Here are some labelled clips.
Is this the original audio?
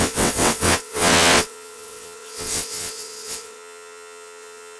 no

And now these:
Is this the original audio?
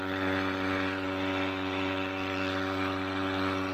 yes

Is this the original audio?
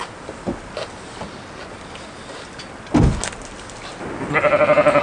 yes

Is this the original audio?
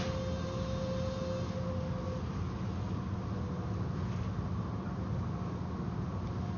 yes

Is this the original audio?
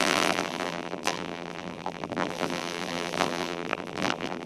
no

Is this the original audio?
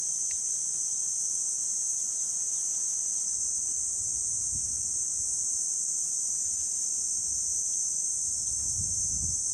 yes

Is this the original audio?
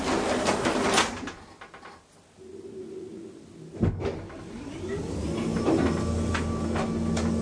yes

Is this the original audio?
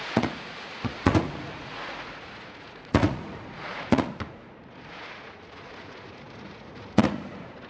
no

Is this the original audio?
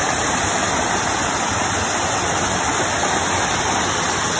yes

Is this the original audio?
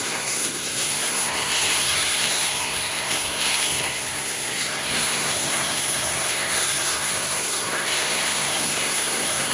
no